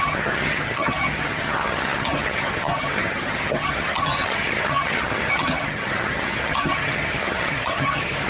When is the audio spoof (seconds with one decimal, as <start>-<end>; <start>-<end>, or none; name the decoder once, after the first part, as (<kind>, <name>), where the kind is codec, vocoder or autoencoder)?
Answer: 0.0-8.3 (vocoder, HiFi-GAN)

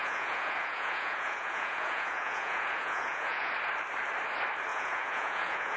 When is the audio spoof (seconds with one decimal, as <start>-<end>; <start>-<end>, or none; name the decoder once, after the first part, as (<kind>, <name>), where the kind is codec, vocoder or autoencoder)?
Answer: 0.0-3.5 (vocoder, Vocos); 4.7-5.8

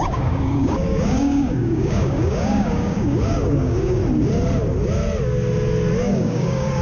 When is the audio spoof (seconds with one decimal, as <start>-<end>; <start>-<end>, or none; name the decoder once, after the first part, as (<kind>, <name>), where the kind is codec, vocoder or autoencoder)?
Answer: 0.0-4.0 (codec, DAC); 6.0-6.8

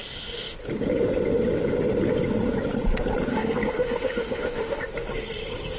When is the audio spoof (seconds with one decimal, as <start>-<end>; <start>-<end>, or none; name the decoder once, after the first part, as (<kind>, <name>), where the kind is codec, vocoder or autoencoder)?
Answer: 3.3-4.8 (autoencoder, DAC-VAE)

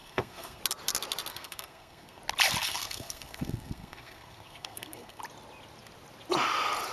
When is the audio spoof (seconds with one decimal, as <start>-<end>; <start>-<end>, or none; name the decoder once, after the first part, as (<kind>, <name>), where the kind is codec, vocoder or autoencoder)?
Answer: 0.0-0.6 (codec, SNAC); 1.3-2.2; 2.6-5.2

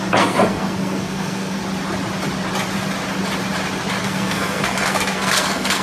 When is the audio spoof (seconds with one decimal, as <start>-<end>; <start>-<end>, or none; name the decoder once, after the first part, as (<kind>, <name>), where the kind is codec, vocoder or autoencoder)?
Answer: 0.0-1.6 (codec, SNAC); 4.0-5.8